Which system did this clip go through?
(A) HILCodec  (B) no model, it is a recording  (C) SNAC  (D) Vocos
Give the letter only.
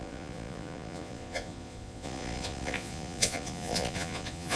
D